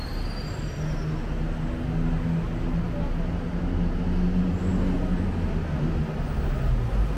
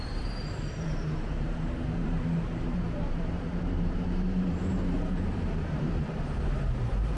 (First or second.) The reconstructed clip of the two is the second